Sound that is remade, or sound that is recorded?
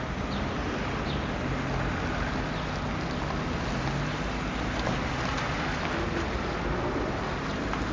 recorded